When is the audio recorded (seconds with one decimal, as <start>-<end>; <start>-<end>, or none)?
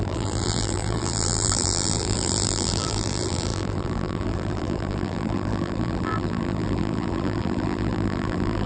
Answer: none